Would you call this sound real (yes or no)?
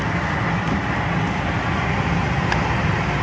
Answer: yes